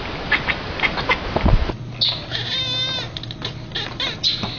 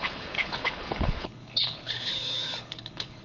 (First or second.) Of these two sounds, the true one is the first